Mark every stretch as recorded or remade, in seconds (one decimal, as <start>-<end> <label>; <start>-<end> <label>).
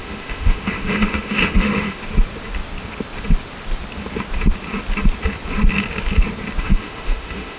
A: 0.0-2.0 remade; 2.0-6.6 recorded; 6.6-7.6 remade